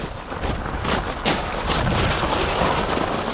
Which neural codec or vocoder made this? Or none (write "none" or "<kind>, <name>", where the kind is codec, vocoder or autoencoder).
none